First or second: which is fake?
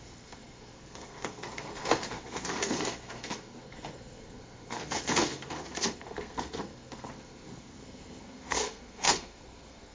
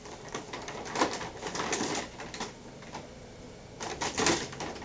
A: first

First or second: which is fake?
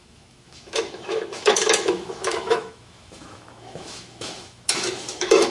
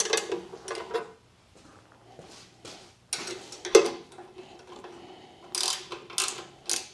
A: first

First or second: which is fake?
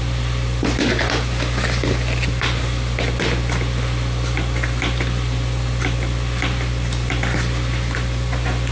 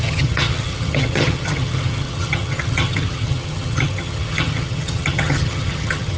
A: second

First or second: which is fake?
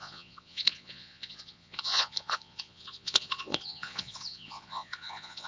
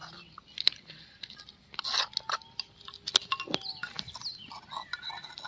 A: first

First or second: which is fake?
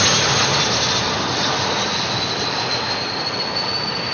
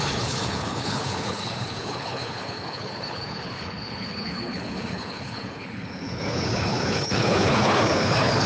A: second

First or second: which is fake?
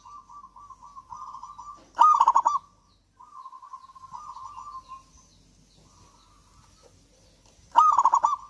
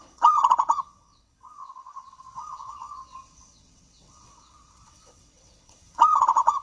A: second